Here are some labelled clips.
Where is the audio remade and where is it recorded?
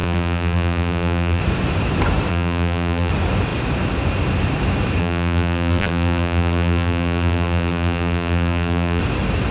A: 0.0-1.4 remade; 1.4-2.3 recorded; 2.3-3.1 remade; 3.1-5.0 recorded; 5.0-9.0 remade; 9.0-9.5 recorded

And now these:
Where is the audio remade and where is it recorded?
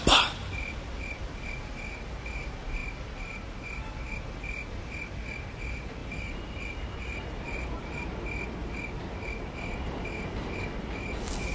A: 0.0-6.0 recorded; 6.0-8.1 remade; 8.1-11.5 recorded